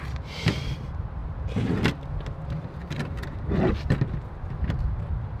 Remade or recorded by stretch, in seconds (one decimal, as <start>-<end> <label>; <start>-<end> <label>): 0.0-5.4 recorded